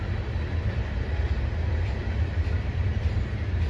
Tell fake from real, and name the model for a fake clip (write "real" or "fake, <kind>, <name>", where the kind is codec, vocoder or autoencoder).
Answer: real